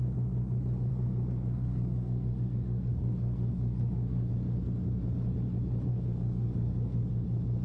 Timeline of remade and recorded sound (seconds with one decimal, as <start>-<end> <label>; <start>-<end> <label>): 0.0-0.9 recorded; 0.9-4.3 remade; 4.3-5.9 recorded; 5.9-7.1 remade; 7.1-7.6 recorded

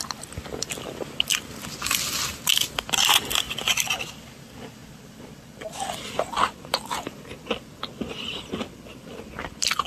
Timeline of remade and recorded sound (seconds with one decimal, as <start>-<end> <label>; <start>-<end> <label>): 0.0-9.9 recorded

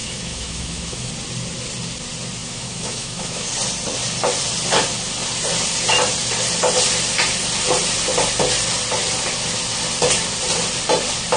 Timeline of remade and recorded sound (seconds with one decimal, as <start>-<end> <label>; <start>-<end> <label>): 0.0-1.1 remade; 1.1-2.4 recorded; 2.4-3.5 remade; 3.5-11.4 recorded

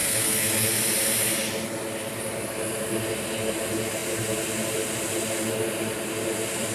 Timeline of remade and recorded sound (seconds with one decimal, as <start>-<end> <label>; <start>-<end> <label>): 0.0-0.7 remade; 0.7-6.7 recorded

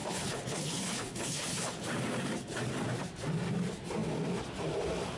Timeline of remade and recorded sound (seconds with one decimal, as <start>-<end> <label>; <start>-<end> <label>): 0.0-1.8 remade; 1.8-5.2 recorded

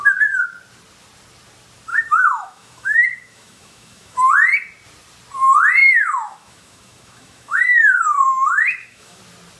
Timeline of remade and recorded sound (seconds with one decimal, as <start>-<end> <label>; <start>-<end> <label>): 0.0-1.9 recorded; 1.9-4.3 remade; 4.3-5.8 recorded; 5.8-9.2 remade; 9.2-9.6 recorded

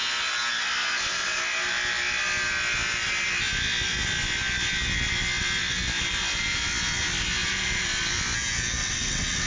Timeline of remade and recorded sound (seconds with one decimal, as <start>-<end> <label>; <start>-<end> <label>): 0.0-8.8 recorded; 8.8-9.5 remade

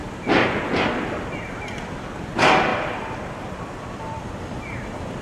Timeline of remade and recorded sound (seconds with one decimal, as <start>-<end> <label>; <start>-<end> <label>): 0.0-1.6 remade; 1.6-2.7 recorded; 2.7-4.2 remade; 4.2-5.2 recorded